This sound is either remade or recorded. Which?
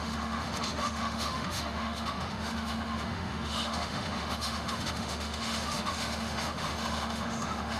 remade